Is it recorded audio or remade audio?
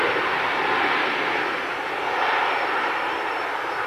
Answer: recorded